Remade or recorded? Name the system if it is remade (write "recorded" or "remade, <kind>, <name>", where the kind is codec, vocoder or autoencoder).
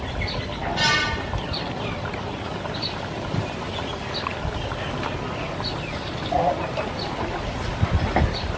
recorded